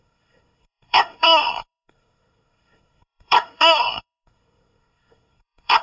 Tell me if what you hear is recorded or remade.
remade